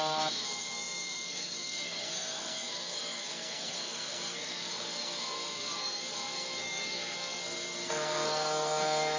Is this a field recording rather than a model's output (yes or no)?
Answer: no